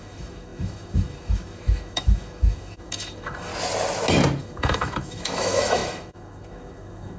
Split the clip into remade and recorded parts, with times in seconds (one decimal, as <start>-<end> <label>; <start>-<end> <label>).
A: 0.0-3.5 remade; 3.5-4.4 recorded; 4.4-7.2 remade